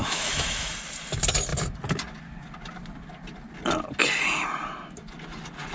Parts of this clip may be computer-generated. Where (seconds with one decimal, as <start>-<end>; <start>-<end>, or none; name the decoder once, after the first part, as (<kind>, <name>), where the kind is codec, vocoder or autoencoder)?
0.0-0.7 (autoencoder, DAC-VAE)